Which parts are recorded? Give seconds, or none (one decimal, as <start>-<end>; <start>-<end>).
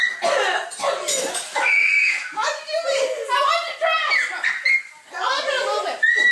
0.0-1.1; 2.6-6.3